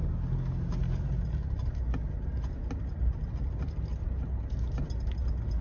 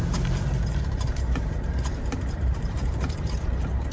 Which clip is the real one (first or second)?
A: first